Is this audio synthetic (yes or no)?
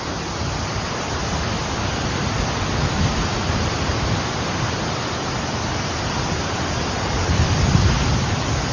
no